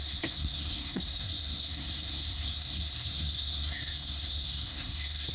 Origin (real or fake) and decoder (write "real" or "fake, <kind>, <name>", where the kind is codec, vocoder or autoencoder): fake, codec, SNAC